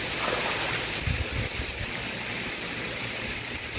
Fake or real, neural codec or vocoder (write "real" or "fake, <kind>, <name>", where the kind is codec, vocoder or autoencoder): real